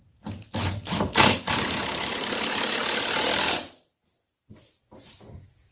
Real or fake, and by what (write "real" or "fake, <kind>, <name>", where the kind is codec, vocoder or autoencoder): real